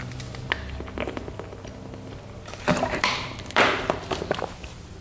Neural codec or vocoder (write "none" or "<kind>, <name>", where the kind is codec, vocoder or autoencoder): none